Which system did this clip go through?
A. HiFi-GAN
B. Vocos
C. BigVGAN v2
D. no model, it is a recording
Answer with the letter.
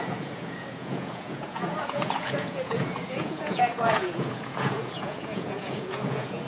B